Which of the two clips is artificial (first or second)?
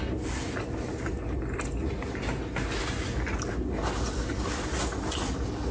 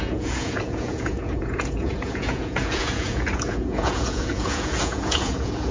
second